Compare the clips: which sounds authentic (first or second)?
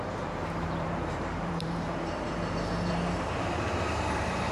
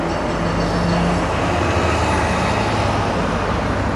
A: second